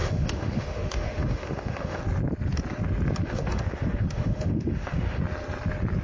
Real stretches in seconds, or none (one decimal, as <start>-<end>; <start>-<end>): 2.0-3.2; 5.2-6.0